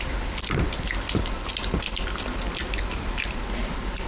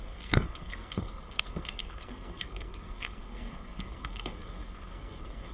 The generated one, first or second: second